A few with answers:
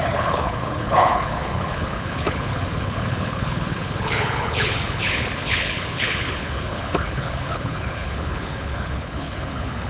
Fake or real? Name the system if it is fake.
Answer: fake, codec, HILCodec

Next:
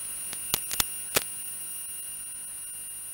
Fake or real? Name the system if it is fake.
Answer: real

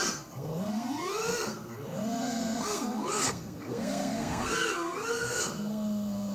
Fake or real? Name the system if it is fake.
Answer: fake, codec, SNAC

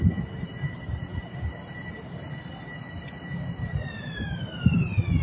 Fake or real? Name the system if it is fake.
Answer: real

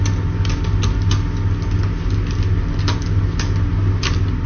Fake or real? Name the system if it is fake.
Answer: real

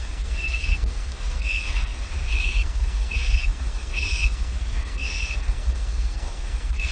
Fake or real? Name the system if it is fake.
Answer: fake, codec, SNAC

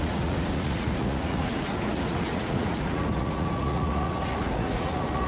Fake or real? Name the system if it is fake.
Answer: fake, vocoder, Vocos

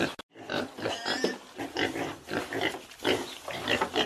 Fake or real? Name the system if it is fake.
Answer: real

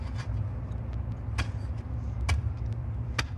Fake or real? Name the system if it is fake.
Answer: real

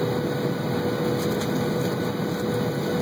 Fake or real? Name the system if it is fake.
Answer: real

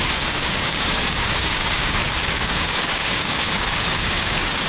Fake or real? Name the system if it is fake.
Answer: fake, codec, DAC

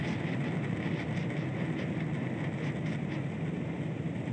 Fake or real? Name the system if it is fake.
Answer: real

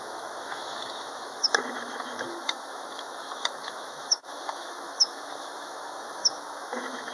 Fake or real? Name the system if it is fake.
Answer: fake, autoencoder, DAC-VAE